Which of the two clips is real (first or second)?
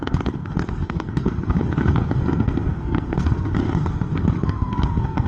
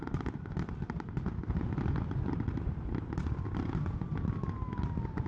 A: second